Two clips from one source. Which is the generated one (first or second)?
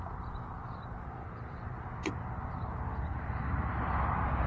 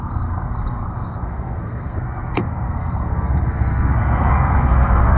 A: second